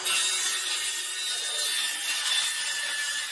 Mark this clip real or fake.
real